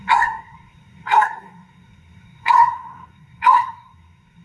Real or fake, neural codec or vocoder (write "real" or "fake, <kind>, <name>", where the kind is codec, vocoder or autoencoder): fake, codec, SNAC